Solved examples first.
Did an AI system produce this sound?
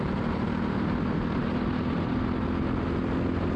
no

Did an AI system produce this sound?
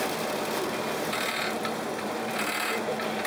yes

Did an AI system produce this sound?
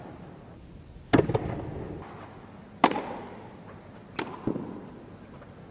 no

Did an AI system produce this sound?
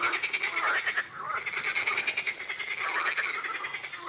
no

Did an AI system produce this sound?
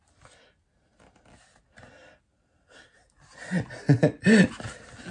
no